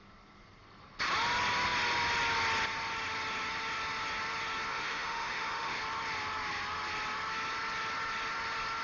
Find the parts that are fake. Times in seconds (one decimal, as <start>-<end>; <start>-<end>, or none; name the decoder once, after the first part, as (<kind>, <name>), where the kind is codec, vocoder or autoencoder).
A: 4.7-5.8 (autoencoder, DAC-VAE)